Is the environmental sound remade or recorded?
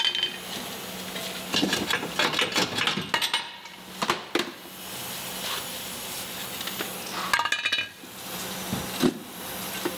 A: recorded